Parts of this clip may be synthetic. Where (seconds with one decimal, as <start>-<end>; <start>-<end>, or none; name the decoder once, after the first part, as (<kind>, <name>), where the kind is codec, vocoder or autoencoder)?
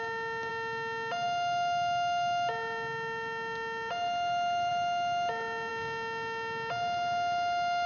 none